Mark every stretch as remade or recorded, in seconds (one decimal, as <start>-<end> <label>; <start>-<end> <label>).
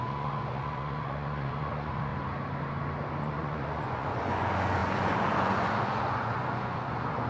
0.0-2.1 remade; 2.1-3.2 recorded; 3.2-7.3 remade